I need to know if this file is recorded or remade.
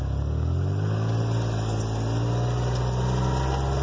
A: recorded